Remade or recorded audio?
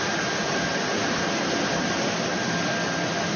recorded